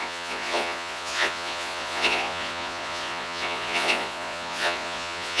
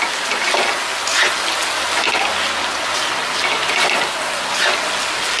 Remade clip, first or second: first